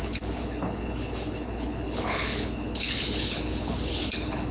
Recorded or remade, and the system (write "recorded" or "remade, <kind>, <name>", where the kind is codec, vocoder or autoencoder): remade, codec, HILCodec